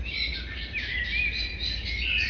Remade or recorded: recorded